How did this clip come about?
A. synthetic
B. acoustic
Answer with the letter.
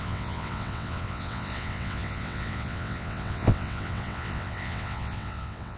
A